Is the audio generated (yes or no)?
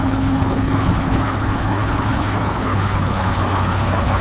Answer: yes